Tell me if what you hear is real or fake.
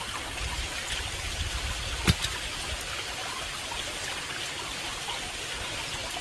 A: real